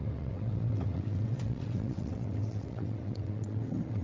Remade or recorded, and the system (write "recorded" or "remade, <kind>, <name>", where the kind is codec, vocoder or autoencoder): remade, vocoder, WaveNeXt